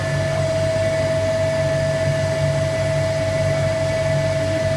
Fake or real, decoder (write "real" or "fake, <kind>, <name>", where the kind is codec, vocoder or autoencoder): real